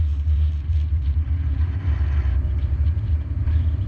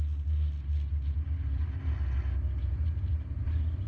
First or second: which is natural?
second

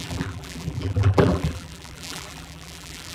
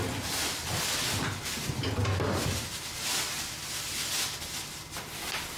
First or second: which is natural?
second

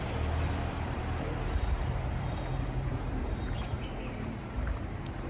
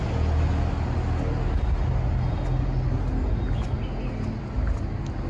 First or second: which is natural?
second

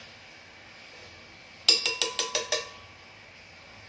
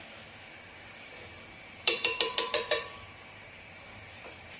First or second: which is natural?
first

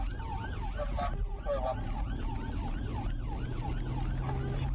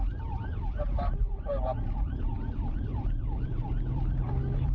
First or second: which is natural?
first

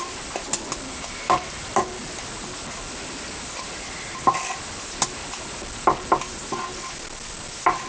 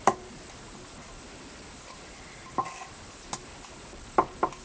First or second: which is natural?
first